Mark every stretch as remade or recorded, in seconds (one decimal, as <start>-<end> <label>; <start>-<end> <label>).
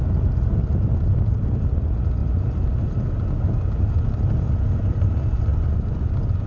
0.0-6.5 recorded